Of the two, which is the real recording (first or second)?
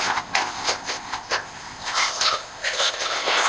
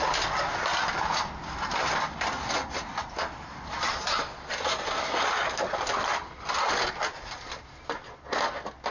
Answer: second